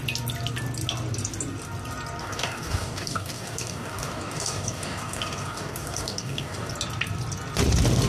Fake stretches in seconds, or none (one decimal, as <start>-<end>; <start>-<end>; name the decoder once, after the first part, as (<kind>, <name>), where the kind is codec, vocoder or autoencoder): 2.2-6.7 (codec, DAC)